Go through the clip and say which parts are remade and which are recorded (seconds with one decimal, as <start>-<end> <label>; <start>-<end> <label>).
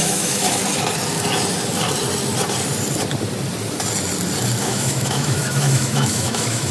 0.0-0.6 remade; 0.6-4.6 recorded; 4.6-6.7 remade